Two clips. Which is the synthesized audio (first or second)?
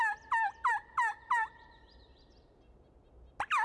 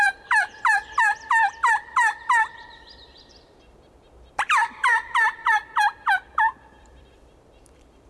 second